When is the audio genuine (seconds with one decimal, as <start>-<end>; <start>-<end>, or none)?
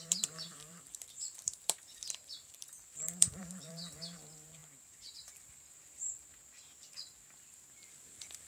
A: 6.3-7.9